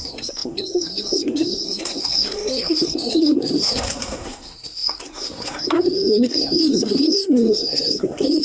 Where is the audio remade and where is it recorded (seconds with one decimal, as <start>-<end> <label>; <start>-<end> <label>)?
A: 0.0-8.4 remade